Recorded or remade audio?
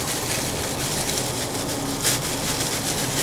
recorded